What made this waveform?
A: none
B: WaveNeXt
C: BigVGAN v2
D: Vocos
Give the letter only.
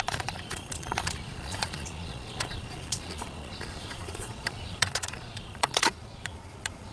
D